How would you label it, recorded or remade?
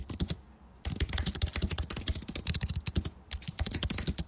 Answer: recorded